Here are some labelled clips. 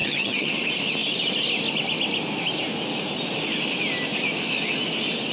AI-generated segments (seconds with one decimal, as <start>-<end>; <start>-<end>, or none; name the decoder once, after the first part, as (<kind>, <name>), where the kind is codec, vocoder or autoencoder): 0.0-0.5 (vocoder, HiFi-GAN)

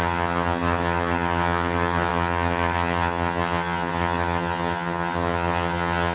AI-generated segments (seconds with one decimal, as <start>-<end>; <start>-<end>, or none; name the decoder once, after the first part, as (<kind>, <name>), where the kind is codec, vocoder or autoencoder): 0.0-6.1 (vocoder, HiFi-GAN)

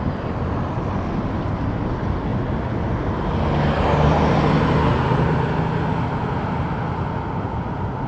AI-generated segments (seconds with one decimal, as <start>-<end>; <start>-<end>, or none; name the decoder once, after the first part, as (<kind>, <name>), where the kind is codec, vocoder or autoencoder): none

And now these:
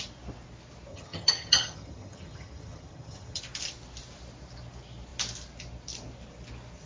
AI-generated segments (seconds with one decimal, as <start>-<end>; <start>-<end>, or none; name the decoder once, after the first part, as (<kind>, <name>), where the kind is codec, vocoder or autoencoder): 0.9-3.4 (vocoder, HiFi-GAN)